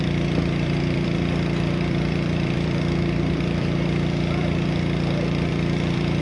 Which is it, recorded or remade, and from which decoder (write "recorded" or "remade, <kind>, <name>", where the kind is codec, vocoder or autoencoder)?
remade, vocoder, BigVGAN v2